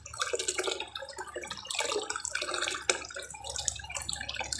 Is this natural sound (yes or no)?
yes